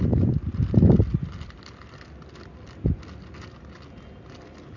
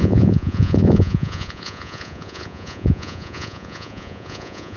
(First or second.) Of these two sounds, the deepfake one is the second